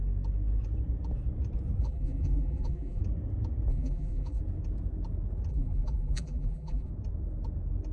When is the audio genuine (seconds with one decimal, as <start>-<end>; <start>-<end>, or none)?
0.0-1.8; 3.0-3.7; 4.4-5.5; 6.9-7.9